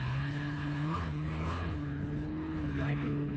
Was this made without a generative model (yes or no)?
no